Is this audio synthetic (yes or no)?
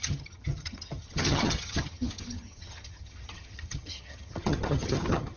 yes